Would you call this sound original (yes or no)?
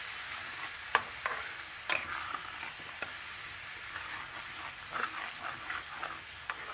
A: yes